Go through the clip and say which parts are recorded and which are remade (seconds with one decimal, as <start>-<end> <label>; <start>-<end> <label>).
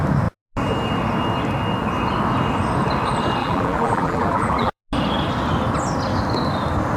0.0-3.4 recorded; 3.4-4.8 remade; 4.8-7.0 recorded